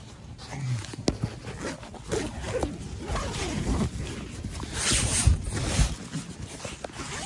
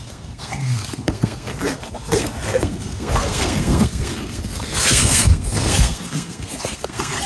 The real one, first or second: first